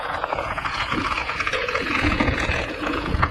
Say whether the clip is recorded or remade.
remade